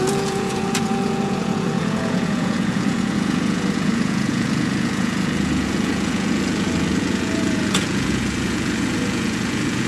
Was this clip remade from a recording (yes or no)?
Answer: yes